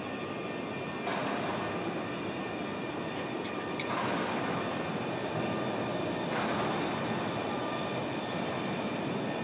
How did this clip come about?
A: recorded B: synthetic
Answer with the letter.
A